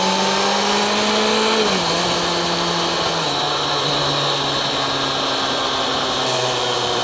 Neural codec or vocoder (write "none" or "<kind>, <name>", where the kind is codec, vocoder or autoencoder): none